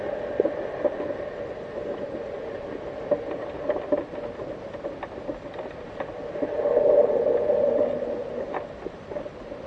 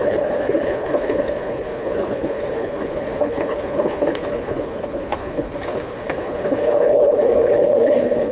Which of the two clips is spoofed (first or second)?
second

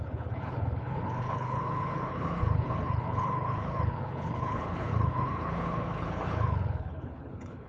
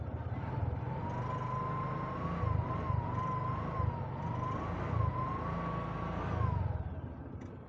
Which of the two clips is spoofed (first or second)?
first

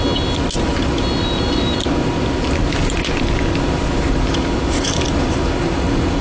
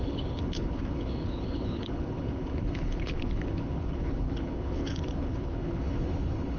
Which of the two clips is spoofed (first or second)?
second